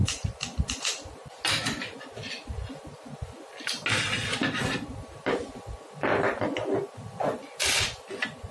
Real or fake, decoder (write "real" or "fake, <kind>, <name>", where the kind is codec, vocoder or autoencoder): real